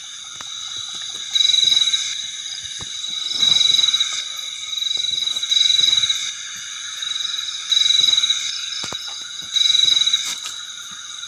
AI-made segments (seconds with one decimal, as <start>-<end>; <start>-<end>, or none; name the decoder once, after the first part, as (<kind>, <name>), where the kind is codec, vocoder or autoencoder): 8.9-9.9 (vocoder, Vocos)